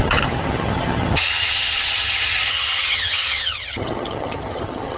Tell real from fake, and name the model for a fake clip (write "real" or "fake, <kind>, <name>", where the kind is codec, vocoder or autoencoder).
fake, vocoder, HiFi-GAN